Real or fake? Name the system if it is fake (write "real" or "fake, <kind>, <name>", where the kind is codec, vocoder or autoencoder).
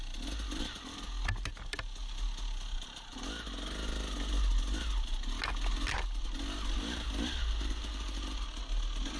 real